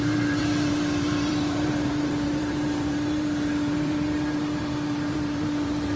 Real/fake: fake